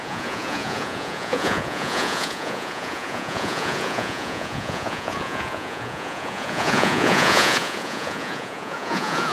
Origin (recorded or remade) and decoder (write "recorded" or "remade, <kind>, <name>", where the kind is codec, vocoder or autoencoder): remade, vocoder, Vocos